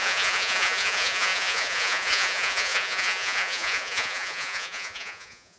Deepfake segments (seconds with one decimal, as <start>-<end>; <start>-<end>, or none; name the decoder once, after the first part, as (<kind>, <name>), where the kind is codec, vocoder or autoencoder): 0.0-5.6 (vocoder, Vocos)